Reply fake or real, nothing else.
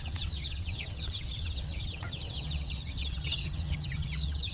fake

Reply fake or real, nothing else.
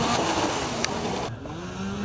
real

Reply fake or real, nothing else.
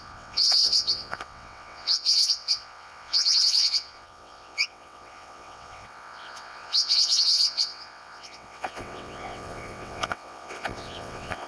fake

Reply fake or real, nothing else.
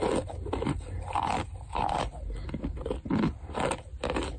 real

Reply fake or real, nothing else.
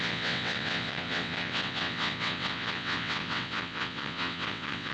fake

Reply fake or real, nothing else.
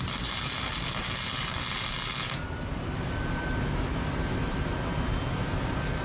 real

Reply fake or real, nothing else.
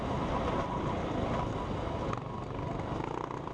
real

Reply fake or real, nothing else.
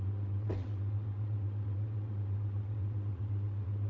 fake